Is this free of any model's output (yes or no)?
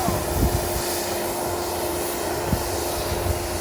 yes